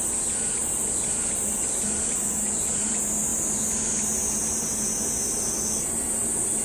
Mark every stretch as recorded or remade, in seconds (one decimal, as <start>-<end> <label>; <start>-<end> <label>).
0.0-6.6 recorded